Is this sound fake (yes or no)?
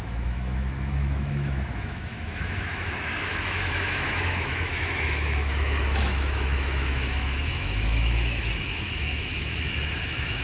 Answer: yes